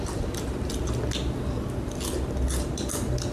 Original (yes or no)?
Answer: yes